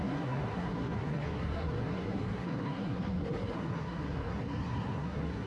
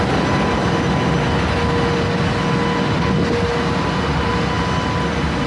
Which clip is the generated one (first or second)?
first